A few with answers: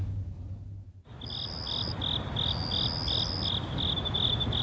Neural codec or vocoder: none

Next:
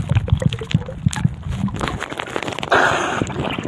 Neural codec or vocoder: none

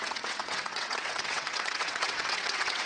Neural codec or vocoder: vocoder, WaveNeXt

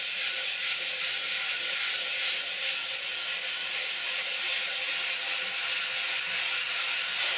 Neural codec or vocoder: none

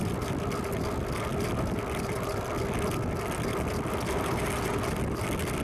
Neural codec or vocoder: none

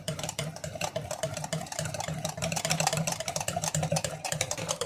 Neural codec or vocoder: vocoder, BigVGAN v2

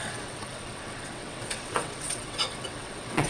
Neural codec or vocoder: vocoder, WaveNeXt